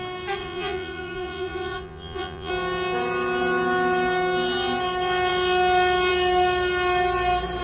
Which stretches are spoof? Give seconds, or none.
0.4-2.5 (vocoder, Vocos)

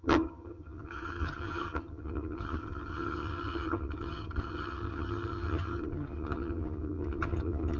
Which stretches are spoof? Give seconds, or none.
0.0-7.8 (vocoder, HiFi-GAN)

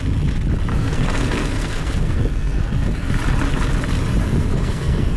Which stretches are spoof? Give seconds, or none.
0.7-3.1 (codec, SNAC); 4.2-5.2